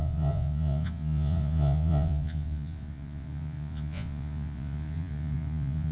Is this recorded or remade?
remade